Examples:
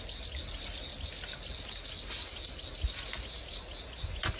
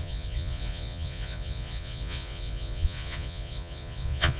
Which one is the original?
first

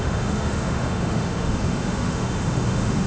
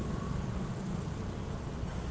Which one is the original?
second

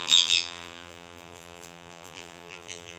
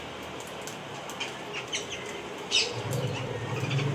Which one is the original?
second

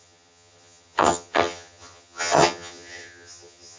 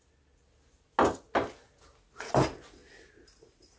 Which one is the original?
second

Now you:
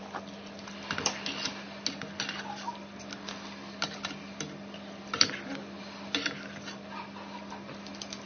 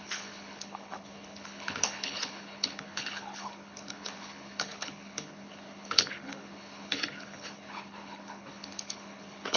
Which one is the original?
first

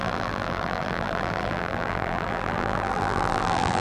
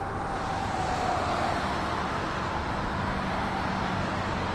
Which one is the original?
second